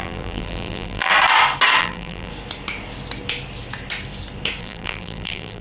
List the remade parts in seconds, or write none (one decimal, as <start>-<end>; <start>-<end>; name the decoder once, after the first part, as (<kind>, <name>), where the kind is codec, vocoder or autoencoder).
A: 0.0-1.1 (vocoder, BigVGAN v2); 1.8-2.3; 4.6-5.6